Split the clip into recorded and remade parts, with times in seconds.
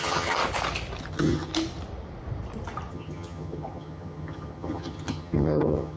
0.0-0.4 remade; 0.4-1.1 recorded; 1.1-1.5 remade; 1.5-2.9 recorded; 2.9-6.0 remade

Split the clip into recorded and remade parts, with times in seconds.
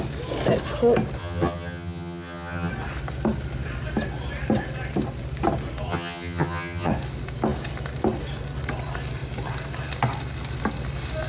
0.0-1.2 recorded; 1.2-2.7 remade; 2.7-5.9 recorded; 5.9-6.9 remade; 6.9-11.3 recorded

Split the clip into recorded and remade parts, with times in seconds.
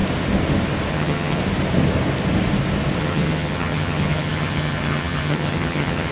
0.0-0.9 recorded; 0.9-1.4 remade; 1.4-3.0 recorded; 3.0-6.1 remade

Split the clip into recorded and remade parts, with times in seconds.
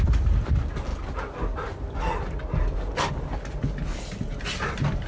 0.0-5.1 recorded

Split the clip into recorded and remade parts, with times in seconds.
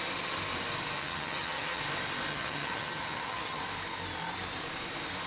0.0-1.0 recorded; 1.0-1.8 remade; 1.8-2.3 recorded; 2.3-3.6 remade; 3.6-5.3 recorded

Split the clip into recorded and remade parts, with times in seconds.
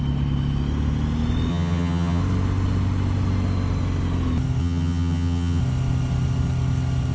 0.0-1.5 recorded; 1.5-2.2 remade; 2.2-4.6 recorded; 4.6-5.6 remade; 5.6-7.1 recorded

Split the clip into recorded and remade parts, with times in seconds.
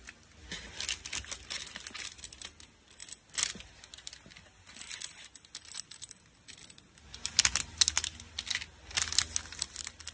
0.0-10.1 recorded